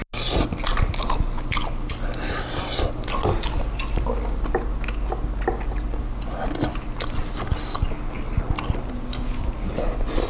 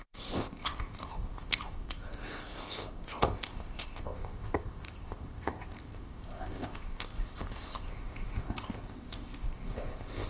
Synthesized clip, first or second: second